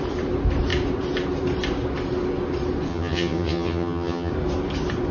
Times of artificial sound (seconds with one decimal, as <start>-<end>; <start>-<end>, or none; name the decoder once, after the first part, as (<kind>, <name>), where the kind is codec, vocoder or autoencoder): 2.9-4.3 (vocoder, HiFi-GAN)